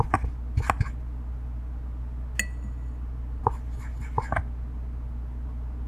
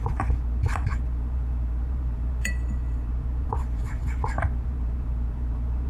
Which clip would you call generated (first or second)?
second